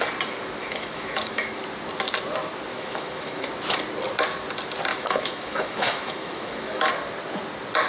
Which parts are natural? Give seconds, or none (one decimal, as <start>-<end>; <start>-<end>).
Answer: 0.0-0.6; 1.6-2.7; 3.5-4.9; 6.9-7.9